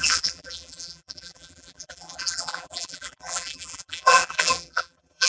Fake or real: fake